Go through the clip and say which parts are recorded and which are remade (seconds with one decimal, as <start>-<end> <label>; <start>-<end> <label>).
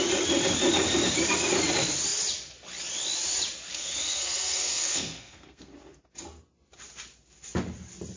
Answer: 0.0-3.7 recorded; 3.7-5.7 remade; 5.7-8.2 recorded